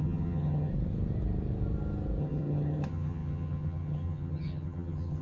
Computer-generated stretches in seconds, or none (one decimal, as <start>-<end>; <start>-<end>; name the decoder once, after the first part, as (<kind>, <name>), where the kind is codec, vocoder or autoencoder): 0.0-0.7 (vocoder, HiFi-GAN); 2.2-5.2